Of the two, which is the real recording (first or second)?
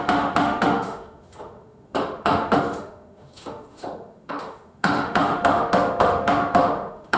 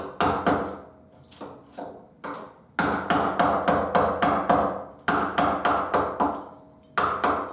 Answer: second